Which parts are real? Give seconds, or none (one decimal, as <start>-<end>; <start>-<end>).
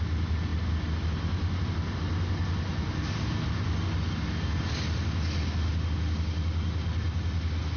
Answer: 0.0-7.8